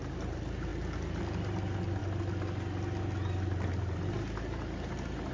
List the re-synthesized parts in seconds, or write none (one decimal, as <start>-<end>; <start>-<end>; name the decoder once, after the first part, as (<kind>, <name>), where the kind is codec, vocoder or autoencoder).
none